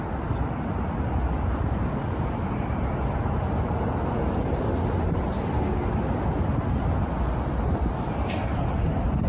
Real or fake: real